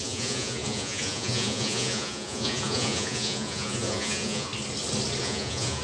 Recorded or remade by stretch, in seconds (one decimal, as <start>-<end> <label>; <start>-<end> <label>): 0.0-4.5 remade; 4.5-5.2 recorded; 5.2-5.8 remade